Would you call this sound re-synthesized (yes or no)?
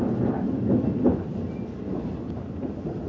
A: no